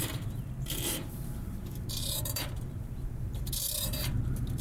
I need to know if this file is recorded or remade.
remade